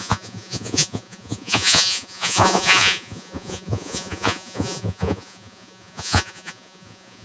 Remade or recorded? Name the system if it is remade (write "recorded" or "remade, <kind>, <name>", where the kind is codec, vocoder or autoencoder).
remade, vocoder, Vocos